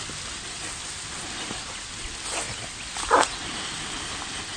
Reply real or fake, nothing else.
real